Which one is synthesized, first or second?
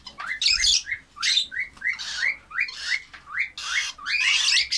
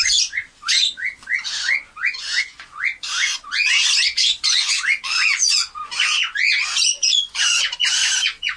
second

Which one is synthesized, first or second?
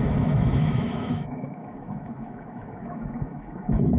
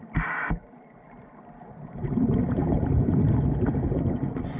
first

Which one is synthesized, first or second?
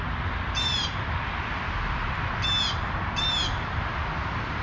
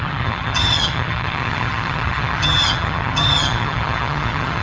second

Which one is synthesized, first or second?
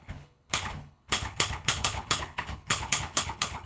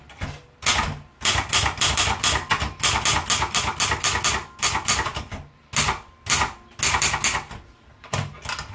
first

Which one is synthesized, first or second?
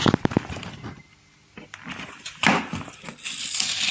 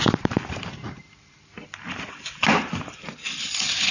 second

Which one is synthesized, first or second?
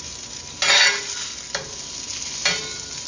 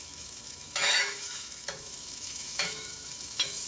second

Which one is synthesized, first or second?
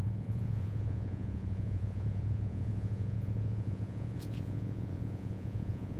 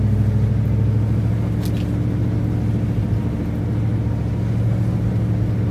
first